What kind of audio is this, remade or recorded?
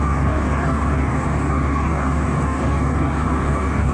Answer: remade